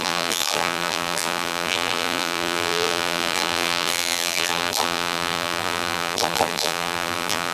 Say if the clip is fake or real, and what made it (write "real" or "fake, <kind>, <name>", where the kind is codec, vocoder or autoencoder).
fake, vocoder, BigVGAN v2